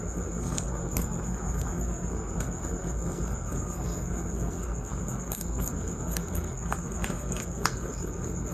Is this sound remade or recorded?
remade